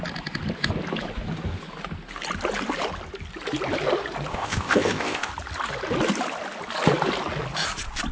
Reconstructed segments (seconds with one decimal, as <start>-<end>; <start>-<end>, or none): 4.3-5.3